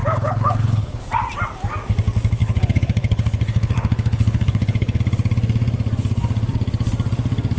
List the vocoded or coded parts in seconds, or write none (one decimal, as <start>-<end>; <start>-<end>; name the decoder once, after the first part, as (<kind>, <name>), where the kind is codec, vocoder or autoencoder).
0.0-1.0 (codec, HILCodec); 2.4-5.0